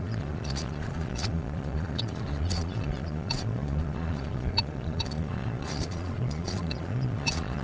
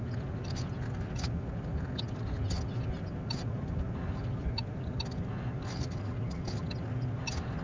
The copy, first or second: first